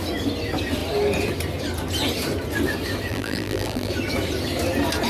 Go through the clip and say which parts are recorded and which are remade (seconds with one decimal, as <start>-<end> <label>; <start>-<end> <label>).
0.0-3.1 recorded; 3.1-3.9 remade; 3.9-5.1 recorded